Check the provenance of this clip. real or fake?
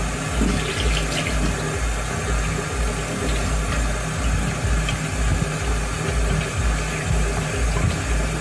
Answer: real